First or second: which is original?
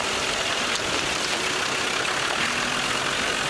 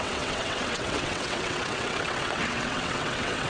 first